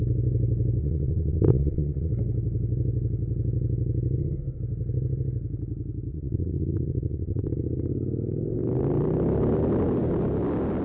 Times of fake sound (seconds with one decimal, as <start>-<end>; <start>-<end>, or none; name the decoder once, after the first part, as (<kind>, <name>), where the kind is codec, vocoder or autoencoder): 0.8-2.1 (vocoder, Vocos); 6.1-7.5